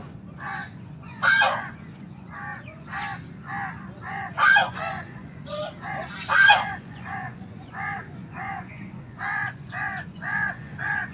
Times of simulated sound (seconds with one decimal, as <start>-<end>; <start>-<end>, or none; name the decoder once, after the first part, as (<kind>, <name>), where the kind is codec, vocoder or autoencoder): 0.0-2.9 (vocoder, Vocos); 4.1-11.1

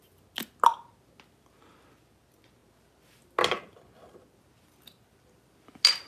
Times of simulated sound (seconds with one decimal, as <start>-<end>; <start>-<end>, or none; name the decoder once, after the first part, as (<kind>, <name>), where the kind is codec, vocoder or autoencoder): none

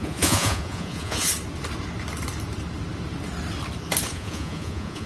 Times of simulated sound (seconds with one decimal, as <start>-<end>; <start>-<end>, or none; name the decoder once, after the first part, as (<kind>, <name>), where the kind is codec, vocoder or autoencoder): 0.0-1.3 (vocoder, Vocos); 4.1-5.1

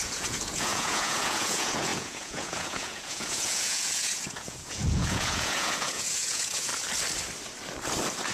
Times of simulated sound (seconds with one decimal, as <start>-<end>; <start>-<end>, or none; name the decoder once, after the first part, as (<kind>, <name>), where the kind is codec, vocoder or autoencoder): 0.0-6.7 (vocoder, Vocos)

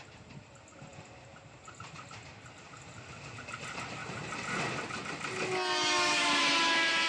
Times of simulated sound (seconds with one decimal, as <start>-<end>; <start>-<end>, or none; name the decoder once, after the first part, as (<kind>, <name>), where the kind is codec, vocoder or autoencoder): none

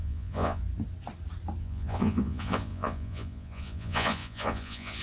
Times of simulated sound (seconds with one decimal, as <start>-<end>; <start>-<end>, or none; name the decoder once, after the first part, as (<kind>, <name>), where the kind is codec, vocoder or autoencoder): 0.0-0.6 (vocoder, Vocos); 1.6-5.0

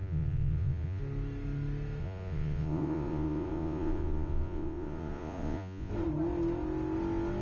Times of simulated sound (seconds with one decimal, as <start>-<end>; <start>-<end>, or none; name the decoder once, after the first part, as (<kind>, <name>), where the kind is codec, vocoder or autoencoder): 0.0-1.0 (vocoder, Vocos); 2.0-5.9

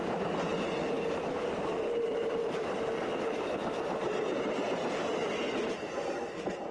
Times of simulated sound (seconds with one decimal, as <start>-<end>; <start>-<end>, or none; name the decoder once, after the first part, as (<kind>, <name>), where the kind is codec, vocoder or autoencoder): none